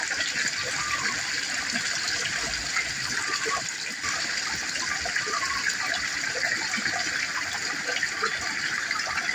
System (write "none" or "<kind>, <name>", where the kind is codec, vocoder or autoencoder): none